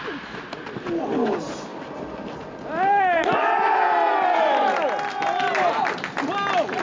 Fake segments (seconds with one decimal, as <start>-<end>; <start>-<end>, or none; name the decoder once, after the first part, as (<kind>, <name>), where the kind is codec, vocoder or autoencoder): none